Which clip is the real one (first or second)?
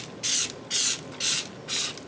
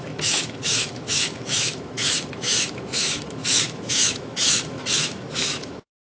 first